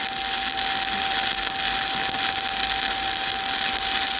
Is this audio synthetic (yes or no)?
no